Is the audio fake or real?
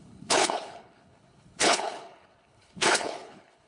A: fake